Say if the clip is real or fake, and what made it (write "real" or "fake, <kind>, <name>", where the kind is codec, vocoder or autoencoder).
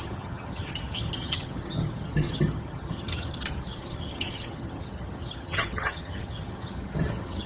fake, vocoder, HiFi-GAN